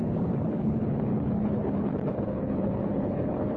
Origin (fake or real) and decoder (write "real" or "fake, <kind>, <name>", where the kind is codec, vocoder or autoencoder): fake, codec, HILCodec